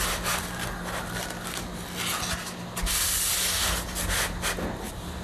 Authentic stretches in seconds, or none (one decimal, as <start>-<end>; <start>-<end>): 0.0-5.2